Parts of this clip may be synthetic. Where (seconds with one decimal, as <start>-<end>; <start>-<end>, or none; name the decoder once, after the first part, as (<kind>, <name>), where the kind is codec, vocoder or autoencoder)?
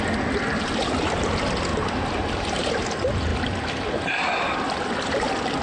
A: 1.7-2.7 (vocoder, BigVGAN v2)